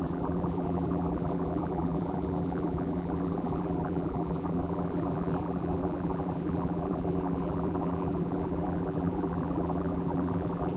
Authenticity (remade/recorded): remade